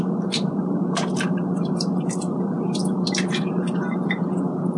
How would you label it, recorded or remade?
remade